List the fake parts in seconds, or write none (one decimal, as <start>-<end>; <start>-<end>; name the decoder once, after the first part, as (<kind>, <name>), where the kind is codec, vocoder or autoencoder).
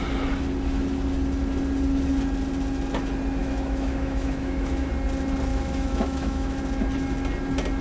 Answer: 3.4-4.9 (autoencoder, DAC-VAE); 5.5-6.6